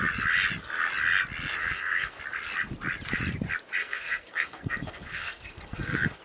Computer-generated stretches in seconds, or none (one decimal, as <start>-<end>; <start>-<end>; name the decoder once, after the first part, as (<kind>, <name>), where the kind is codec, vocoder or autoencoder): 1.6-2.2 (codec, SNAC); 3.8-6.2